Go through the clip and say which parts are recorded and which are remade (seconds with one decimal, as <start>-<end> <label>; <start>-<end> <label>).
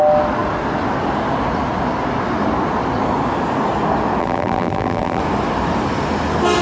0.0-4.2 recorded; 4.2-5.2 remade; 5.2-6.6 recorded